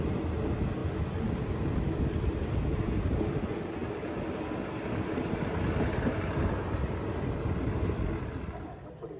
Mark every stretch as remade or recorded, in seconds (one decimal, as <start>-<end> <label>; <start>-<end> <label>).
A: 0.0-9.2 recorded